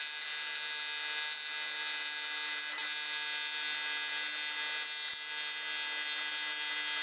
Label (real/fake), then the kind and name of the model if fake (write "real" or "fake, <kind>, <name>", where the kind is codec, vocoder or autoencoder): real